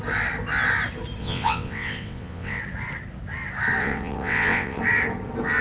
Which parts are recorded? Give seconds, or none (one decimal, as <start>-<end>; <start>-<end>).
0.0-1.2; 2.6-3.8; 4.8-5.6